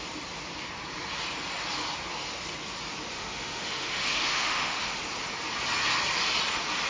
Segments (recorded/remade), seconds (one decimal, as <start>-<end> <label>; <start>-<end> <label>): 0.0-3.1 recorded; 3.1-5.0 remade; 5.0-6.9 recorded